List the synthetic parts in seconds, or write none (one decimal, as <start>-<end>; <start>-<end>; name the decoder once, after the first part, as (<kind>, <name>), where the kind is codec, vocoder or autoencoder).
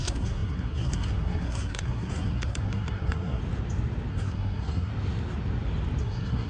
0.0-3.4 (codec, SNAC); 4.1-4.9; 6.0-6.5